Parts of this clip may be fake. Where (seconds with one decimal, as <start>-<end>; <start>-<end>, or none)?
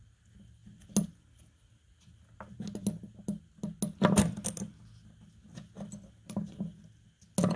none